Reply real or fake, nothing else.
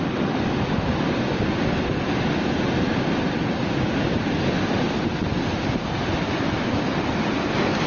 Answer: real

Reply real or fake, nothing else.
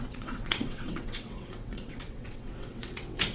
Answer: fake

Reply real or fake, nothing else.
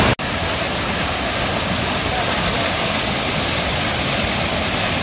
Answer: real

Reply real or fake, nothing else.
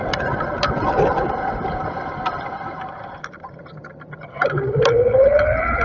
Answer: fake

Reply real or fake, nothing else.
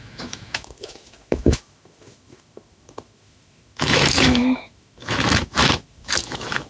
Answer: fake